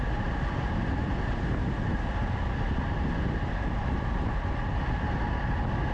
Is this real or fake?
real